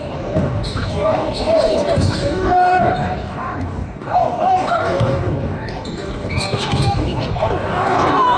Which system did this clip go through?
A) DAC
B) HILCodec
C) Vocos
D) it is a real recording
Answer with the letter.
A